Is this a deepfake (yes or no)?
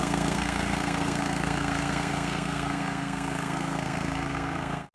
yes